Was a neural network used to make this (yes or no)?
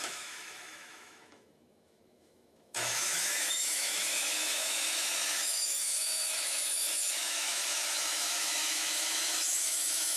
yes